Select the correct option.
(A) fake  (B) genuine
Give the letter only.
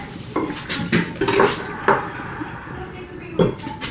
B